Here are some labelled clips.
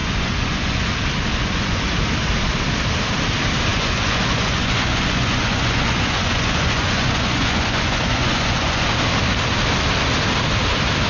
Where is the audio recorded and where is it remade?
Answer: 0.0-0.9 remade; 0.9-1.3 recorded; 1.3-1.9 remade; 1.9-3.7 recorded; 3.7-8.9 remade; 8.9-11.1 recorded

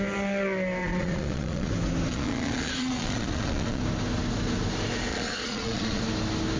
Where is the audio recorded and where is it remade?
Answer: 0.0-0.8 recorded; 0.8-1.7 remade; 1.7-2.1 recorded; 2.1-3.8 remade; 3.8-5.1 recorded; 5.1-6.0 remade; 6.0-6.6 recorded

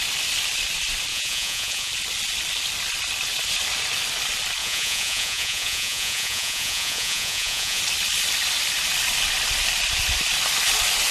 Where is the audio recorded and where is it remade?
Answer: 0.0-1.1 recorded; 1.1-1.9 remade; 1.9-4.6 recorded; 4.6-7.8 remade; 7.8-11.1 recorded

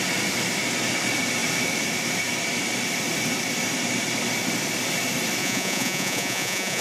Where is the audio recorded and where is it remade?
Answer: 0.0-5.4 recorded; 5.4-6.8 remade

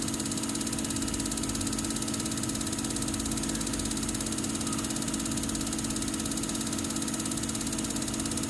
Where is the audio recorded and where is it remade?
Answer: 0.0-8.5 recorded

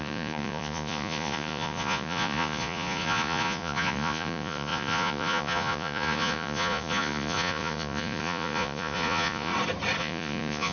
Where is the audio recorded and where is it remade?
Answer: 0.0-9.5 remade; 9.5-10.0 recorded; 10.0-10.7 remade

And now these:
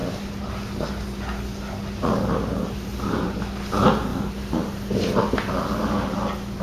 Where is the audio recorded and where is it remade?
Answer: 0.0-6.6 recorded

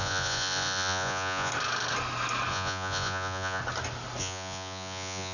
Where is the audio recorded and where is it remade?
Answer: 0.0-1.5 remade; 1.5-2.5 recorded; 2.5-3.6 remade; 3.6-4.2 recorded; 4.2-5.3 remade